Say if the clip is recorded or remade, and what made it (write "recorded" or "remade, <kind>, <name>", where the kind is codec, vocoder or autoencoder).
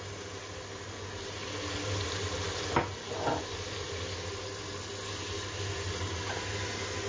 recorded